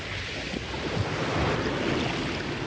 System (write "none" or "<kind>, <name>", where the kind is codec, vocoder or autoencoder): none